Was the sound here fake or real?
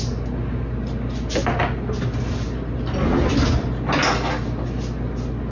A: real